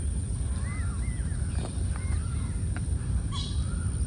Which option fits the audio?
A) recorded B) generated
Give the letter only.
A